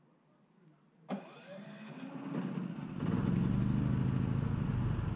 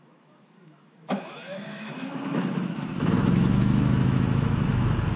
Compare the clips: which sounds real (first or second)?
first